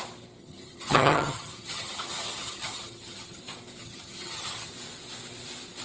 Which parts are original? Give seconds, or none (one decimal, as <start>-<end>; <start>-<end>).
0.0-0.4; 3.4-3.8; 4.7-5.8